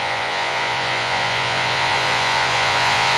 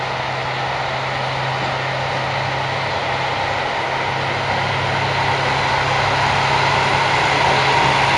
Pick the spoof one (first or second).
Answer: first